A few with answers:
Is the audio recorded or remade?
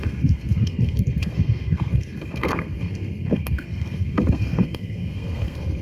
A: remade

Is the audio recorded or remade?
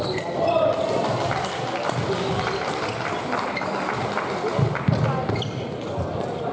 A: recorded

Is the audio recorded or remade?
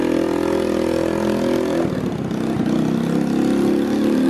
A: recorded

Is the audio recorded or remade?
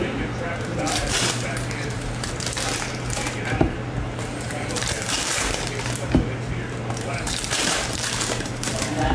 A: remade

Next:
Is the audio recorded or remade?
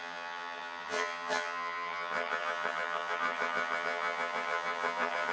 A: remade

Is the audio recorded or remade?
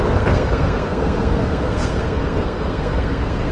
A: remade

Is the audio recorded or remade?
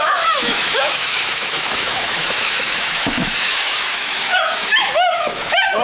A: remade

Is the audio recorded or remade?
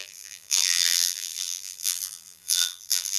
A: remade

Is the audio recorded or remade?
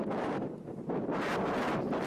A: recorded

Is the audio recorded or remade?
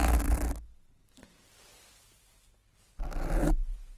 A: recorded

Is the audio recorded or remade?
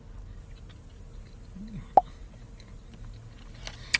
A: recorded